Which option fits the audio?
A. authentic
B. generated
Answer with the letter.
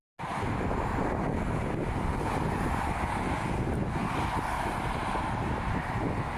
A